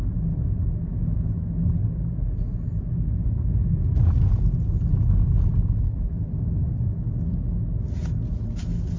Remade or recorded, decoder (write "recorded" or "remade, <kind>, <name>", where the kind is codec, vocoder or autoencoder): recorded